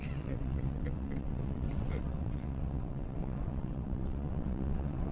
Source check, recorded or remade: remade